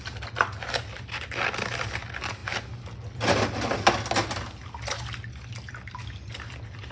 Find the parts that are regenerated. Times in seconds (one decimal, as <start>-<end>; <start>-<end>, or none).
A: none

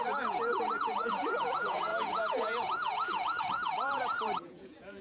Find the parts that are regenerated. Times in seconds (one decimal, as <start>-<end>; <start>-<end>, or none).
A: 0.0-5.0

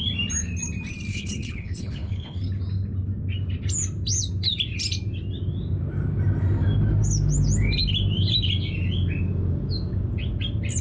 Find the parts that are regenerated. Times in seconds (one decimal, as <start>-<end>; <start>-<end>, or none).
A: 1.1-2.5

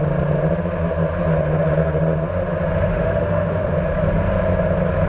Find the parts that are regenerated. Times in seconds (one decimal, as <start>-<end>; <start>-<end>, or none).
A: 2.9-3.7

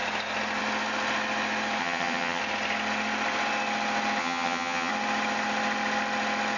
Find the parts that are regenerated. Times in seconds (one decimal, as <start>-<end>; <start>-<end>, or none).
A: 1.8-2.4; 4.2-4.9

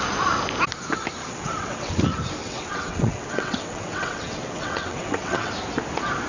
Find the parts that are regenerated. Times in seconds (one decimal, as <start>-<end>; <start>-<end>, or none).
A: 1.2-2.0; 2.4-5.5